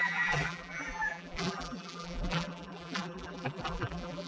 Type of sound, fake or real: fake